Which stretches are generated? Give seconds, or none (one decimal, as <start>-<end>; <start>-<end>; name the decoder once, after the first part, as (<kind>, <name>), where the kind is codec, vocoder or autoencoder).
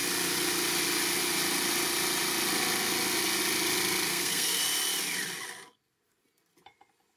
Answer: 4.1-4.6 (codec, SNAC)